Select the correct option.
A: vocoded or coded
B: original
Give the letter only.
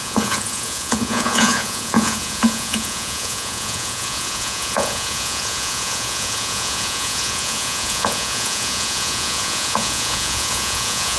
A